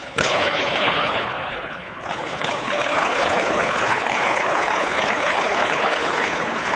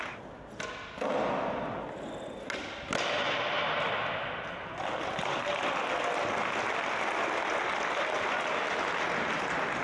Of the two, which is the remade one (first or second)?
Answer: first